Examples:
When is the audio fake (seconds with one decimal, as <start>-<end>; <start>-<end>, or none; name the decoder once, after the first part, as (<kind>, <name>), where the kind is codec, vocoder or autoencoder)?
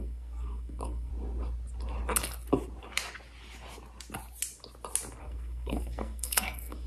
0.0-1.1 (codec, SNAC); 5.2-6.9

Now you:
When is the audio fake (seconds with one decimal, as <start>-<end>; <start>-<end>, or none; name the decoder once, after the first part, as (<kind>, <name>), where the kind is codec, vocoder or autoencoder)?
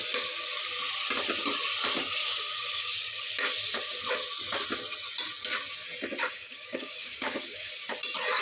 2.2-3.2 (codec, DAC); 6.2-7.7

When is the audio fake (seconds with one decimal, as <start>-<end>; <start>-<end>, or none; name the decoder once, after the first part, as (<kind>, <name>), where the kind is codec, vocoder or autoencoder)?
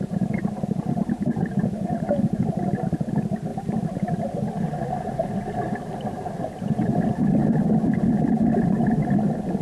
none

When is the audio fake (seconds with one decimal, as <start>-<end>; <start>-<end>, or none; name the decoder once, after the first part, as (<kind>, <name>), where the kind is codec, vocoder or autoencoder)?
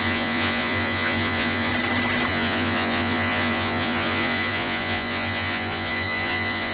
0.0-1.7 (vocoder, Vocos); 2.3-6.7